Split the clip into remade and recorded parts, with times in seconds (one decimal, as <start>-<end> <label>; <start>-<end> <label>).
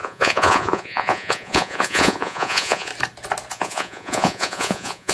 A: 0.0-2.9 remade; 2.9-3.5 recorded; 3.5-5.1 remade